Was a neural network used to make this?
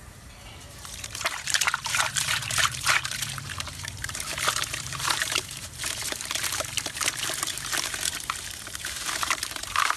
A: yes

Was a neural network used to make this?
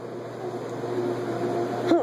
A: no